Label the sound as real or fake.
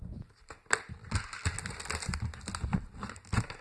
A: real